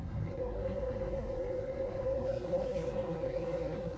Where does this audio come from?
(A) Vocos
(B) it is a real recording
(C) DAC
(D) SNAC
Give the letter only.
D